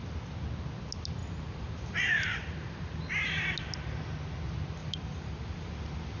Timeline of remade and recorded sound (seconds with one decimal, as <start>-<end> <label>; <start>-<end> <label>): 0.0-1.2 recorded; 1.2-3.0 remade; 3.0-4.8 recorded; 4.8-5.7 remade; 5.7-6.2 recorded